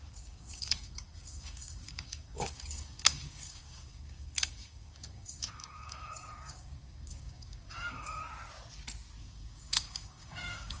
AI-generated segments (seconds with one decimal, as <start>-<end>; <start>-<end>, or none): 0.0-8.2; 9.2-10.8